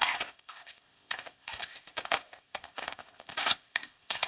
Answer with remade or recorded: remade